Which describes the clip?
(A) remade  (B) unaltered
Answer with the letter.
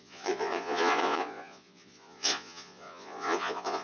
A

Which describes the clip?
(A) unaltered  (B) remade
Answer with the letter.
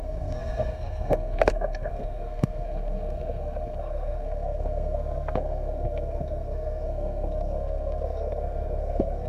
B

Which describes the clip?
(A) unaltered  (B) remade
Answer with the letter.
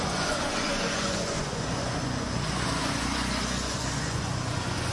B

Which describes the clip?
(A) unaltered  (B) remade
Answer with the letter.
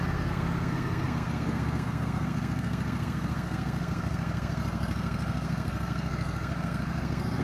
B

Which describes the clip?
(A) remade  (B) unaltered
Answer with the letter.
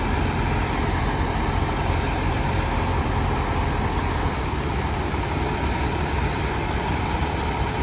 B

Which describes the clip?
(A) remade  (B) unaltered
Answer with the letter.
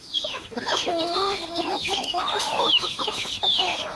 A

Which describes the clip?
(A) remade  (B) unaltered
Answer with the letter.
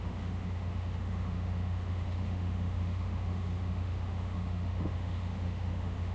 A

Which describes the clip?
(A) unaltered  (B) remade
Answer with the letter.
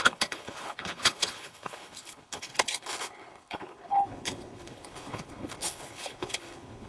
B